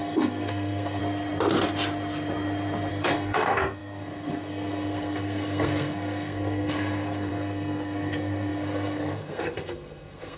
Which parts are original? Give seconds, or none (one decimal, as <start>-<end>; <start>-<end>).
1.0-2.9